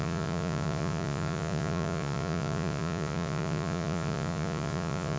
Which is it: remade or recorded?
remade